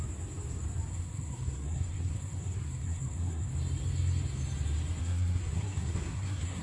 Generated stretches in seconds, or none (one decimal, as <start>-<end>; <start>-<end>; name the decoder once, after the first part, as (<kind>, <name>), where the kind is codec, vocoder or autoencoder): 0.9-3.5 (codec, SNAC); 5.0-6.6